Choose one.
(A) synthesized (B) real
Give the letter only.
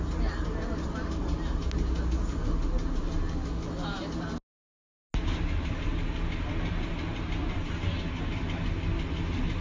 B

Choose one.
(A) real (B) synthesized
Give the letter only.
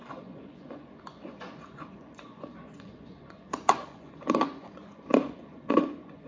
B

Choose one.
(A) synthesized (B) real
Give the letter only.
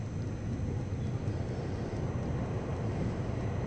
B